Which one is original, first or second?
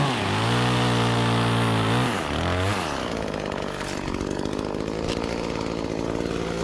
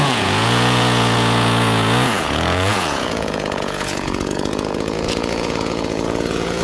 first